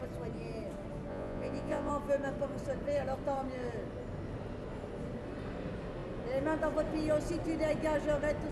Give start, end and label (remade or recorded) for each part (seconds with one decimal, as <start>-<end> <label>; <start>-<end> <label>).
0.0-1.1 recorded; 1.1-1.9 remade; 1.9-8.5 recorded